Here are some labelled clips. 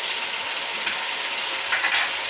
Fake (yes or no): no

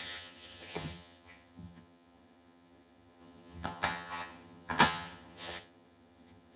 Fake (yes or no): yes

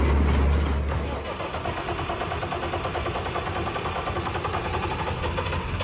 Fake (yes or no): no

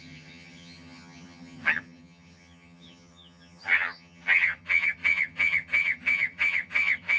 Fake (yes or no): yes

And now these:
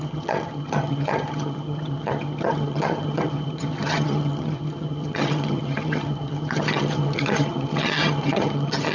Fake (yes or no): yes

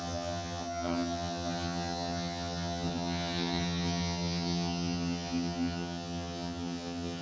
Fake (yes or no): yes